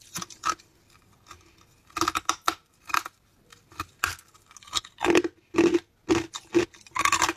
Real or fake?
real